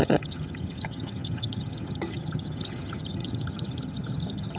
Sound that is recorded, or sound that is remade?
remade